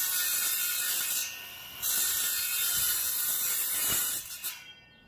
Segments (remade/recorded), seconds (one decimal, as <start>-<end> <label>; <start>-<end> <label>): 0.0-5.1 recorded